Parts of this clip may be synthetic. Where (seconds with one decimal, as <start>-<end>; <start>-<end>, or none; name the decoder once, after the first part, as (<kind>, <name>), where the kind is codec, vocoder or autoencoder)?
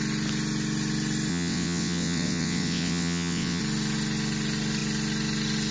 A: 1.3-3.6 (vocoder, WaveNeXt)